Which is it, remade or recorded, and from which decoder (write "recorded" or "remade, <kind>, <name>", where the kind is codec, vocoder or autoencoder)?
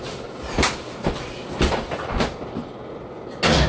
recorded